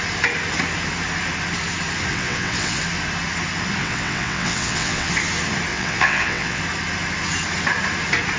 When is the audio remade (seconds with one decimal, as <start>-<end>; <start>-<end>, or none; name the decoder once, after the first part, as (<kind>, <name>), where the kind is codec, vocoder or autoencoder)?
2.1-2.8 (vocoder, WaveNeXt); 3.8-5.1; 5.7-6.6